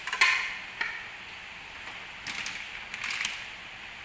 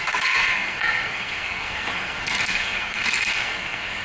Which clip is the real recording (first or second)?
first